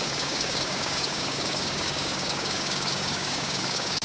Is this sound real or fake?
fake